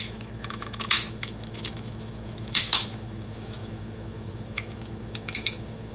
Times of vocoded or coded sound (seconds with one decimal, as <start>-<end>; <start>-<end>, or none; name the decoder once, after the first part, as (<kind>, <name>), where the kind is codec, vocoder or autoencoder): 0.0-5.9 (autoencoder, DAC-VAE)

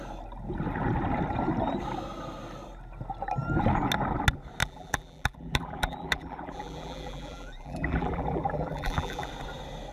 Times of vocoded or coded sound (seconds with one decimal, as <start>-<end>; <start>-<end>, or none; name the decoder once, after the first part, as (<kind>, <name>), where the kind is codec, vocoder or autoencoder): 4.6-9.3 (vocoder, BigVGAN v2)

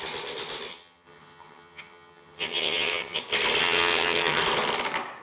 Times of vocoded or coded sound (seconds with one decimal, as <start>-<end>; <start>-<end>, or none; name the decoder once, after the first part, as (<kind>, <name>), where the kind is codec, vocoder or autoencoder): 0.7-3.2 (vocoder, HiFi-GAN); 3.6-4.4

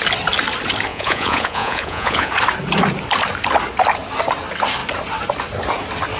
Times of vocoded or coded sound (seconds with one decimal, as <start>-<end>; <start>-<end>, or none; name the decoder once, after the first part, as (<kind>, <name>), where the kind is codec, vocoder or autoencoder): 0.9-2.3 (vocoder, Vocos)